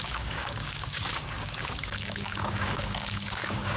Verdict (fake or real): fake